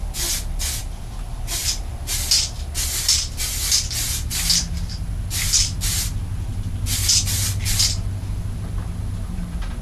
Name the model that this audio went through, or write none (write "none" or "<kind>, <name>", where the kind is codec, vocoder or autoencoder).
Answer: none